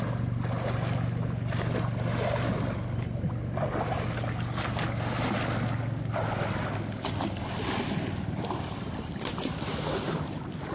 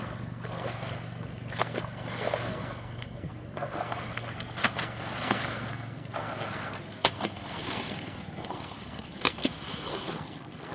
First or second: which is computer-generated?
second